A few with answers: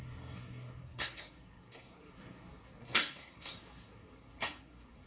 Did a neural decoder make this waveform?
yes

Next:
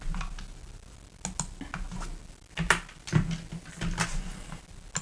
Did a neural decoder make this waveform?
no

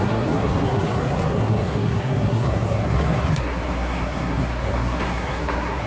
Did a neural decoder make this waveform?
yes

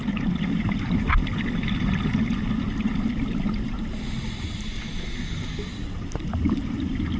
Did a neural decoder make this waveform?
no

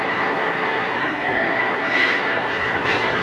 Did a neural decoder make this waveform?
yes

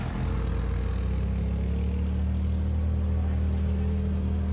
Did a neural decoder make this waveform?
no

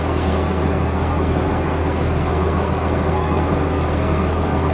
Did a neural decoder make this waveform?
yes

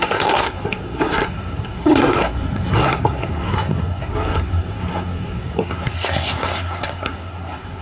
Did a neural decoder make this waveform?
yes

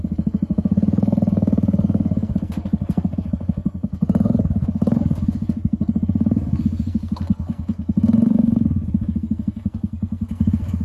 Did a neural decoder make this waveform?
yes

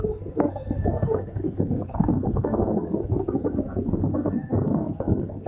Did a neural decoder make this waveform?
yes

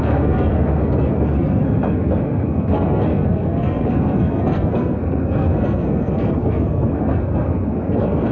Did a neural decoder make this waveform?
yes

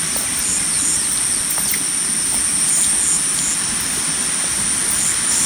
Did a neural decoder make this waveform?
no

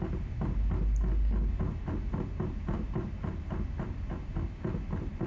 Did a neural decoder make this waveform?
no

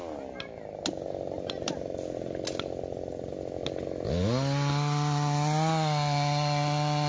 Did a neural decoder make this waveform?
no